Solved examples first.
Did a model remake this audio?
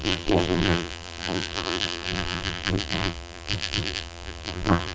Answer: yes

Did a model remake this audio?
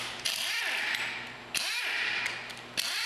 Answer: no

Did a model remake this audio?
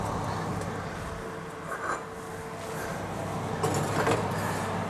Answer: no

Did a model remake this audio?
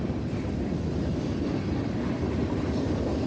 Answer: yes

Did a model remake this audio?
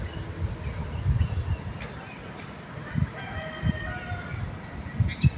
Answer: no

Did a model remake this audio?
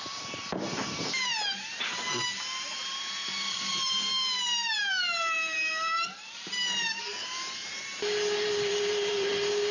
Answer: yes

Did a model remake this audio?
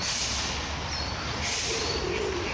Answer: no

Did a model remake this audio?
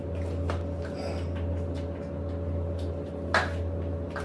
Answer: no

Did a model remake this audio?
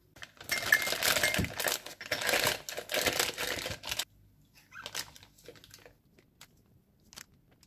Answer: no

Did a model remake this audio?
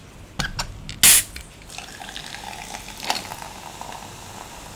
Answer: no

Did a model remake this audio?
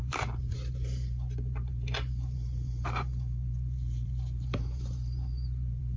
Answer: yes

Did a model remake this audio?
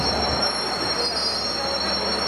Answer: no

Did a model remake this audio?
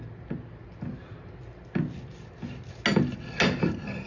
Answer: no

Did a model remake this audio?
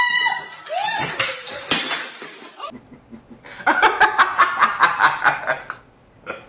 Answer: no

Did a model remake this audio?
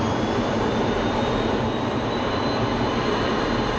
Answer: yes